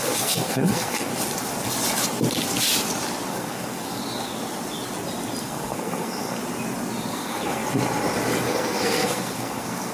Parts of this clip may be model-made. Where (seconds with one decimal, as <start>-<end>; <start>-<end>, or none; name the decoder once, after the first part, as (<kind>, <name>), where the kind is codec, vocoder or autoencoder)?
0.0-1.1 (codec, SNAC); 3.3-4.0; 5.4-6.4; 7.1-7.6; 8.4-9.9

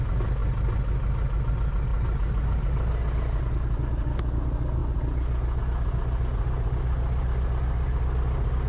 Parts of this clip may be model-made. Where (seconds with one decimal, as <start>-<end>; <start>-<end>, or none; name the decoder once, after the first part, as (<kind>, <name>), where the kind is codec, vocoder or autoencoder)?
none

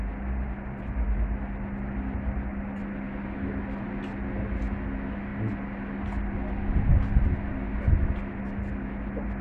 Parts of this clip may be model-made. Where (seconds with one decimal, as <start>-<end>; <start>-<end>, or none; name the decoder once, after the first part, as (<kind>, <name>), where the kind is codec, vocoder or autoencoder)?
none

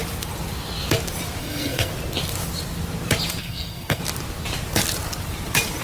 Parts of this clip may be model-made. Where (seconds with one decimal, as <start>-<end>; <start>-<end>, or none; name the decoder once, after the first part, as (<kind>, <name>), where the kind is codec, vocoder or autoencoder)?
1.4-1.9 (codec, SNAC); 3.4-4.0

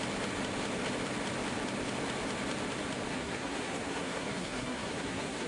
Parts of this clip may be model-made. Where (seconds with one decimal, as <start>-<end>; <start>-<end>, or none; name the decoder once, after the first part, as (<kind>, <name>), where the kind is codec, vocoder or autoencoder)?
3.1-5.5 (codec, SNAC)